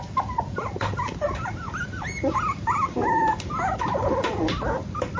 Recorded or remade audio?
recorded